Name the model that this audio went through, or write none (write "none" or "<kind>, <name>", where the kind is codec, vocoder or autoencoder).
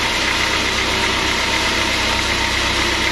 none